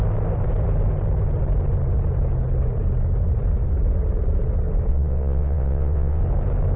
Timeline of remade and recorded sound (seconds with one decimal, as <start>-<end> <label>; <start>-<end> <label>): 0.0-4.9 recorded; 4.9-6.2 remade; 6.2-6.8 recorded